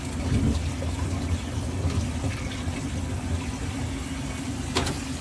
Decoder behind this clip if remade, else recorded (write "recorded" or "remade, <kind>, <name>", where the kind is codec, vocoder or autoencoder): recorded